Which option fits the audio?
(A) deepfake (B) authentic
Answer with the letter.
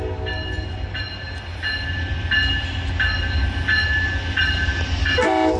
B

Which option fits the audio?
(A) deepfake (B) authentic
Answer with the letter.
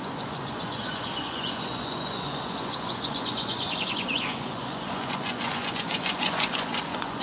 A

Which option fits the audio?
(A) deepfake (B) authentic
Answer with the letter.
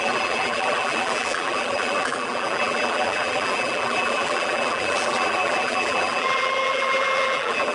A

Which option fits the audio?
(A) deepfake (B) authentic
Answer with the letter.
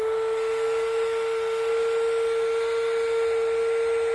B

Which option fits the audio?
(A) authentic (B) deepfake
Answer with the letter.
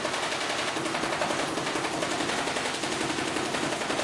A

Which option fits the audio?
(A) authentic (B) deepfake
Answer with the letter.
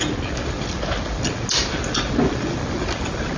A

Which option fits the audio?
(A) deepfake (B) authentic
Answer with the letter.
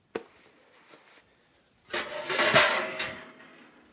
B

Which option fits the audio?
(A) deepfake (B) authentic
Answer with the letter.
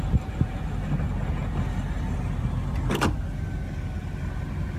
B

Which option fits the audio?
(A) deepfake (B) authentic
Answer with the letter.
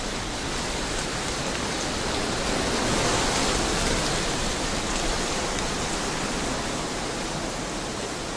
B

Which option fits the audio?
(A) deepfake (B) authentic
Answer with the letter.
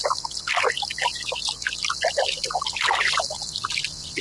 B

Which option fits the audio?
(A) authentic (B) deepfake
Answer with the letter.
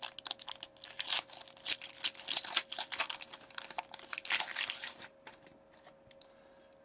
A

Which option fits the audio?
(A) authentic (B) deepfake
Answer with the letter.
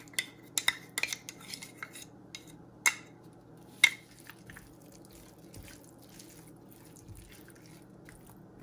A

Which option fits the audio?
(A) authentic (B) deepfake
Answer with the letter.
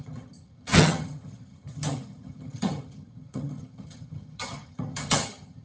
B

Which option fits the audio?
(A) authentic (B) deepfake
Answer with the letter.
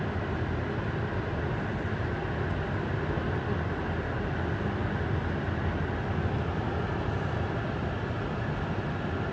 A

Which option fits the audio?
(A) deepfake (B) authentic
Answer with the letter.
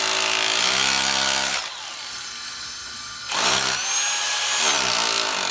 B